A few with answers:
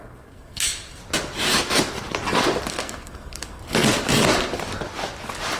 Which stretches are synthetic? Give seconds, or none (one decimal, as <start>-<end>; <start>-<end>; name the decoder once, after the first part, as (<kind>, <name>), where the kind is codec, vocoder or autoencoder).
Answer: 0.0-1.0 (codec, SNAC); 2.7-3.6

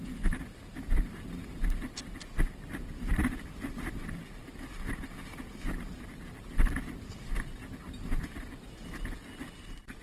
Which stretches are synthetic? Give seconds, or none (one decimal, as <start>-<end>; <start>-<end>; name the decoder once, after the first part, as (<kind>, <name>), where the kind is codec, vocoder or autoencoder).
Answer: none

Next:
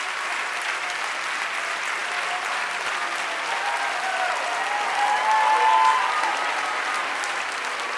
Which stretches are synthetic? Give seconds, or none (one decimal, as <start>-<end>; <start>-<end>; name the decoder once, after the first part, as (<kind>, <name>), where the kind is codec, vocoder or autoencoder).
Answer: none